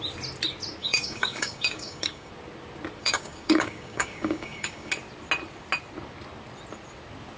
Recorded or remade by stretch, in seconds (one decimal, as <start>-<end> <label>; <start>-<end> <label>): 0.0-0.8 recorded; 0.8-2.3 remade; 2.3-3.0 recorded; 3.0-4.9 remade; 4.9-7.4 recorded